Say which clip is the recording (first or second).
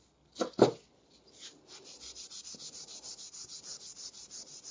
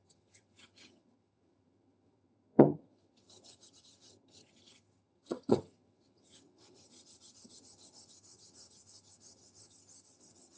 first